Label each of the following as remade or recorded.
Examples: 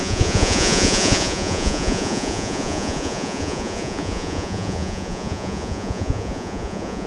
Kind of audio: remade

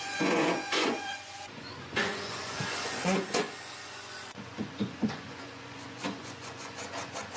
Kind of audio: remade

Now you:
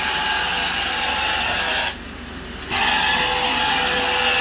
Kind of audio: recorded